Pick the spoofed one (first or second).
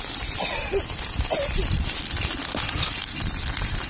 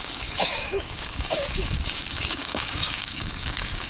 second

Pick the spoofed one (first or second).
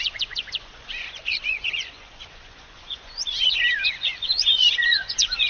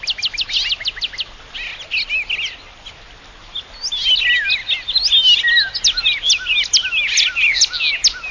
first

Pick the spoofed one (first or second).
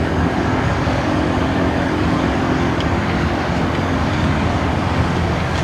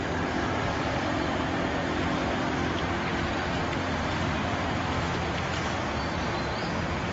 first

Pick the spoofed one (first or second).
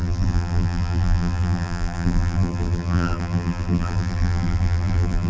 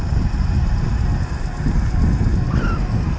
first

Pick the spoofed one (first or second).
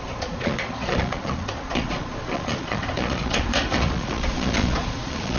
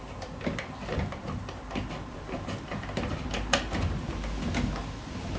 first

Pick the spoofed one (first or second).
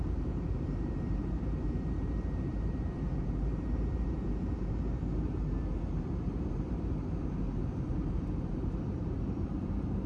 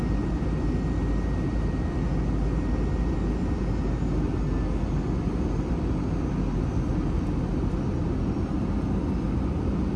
first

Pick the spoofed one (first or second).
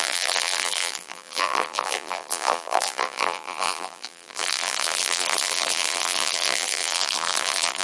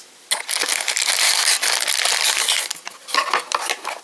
first